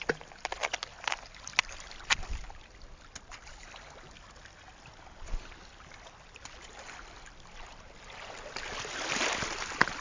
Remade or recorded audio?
recorded